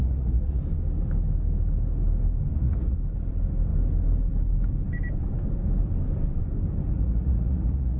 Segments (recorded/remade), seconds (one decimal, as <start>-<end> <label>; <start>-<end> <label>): 0.0-0.6 remade; 0.6-2.5 recorded; 2.5-3.0 remade; 3.0-6.9 recorded; 6.9-8.0 remade